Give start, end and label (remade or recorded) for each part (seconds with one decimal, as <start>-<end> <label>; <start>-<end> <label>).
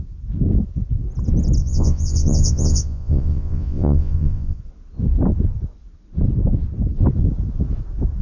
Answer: 0.0-1.6 recorded; 1.6-4.6 remade; 4.6-8.2 recorded